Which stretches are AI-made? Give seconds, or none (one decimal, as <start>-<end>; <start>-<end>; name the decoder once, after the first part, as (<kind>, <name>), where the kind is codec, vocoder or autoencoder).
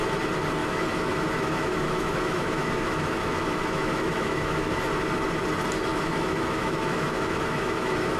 0.6-4.8 (autoencoder, DAC-VAE); 5.9-8.2